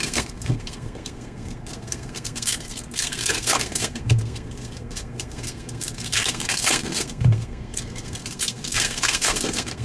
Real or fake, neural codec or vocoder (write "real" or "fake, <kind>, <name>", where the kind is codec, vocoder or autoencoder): fake, codec, SNAC